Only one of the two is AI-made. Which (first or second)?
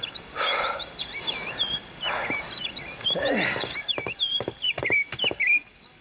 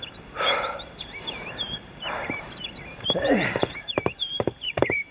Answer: second